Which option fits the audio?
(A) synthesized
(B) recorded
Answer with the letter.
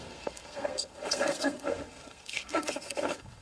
A